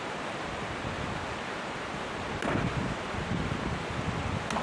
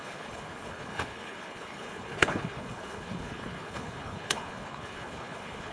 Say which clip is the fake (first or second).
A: second